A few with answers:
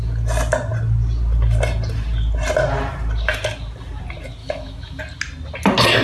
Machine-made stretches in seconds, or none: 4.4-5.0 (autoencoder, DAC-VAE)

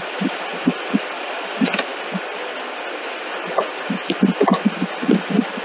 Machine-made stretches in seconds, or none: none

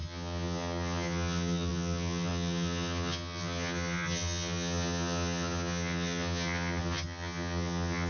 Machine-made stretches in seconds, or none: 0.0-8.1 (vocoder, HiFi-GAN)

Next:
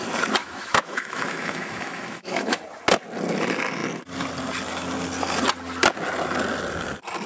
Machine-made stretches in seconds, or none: 0.4-2.6 (autoencoder, DAC-VAE)

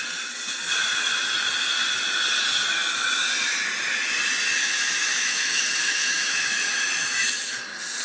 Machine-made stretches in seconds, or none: 4.6-7.6 (autoencoder, DAC-VAE)

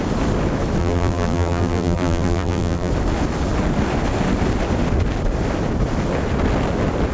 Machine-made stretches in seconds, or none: 0.8-2.9 (vocoder, BigVGAN v2)

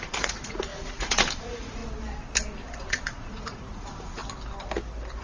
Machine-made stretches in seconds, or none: 0.0-1.8 (vocoder, Vocos); 2.8-4.2

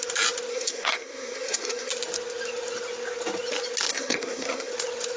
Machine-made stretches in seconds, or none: 0.5-1.9 (codec, SNAC); 3.9-4.7